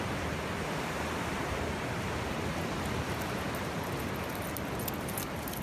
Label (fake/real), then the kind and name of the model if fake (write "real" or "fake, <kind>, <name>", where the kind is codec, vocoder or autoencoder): real